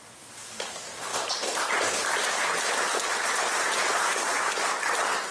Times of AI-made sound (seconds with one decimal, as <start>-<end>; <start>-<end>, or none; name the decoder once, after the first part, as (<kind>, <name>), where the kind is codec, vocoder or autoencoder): none